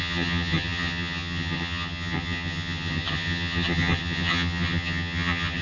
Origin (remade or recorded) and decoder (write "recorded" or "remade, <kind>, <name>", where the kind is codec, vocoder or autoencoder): remade, vocoder, HiFi-GAN